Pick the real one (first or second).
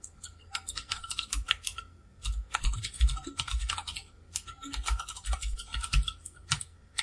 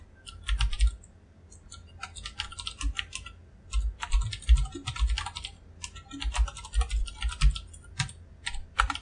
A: second